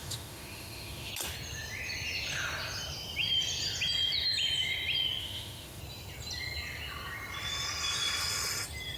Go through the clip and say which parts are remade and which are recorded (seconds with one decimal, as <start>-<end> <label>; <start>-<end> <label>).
0.0-1.1 remade; 1.1-5.2 recorded; 5.2-5.8 remade; 5.8-9.0 recorded